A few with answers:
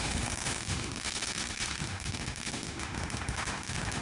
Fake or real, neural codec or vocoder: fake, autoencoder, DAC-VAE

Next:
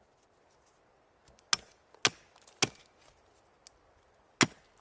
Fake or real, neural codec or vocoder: real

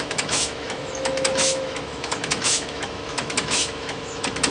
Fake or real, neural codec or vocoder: fake, autoencoder, DAC-VAE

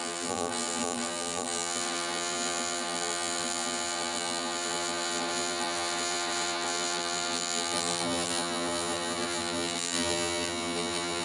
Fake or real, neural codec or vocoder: fake, vocoder, BigVGAN v2